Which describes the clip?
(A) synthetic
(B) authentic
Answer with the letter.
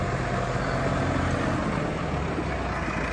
B